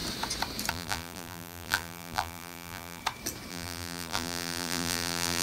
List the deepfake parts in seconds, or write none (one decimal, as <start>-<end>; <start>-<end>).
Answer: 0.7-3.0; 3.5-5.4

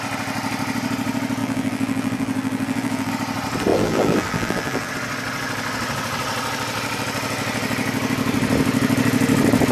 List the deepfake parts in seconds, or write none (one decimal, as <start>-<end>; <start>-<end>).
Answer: 1.4-3.1; 3.7-4.9

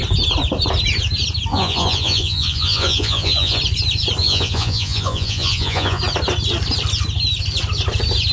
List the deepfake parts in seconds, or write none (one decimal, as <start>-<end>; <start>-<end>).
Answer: 1.5-3.6; 4.2-6.0